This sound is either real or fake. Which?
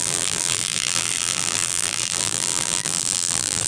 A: fake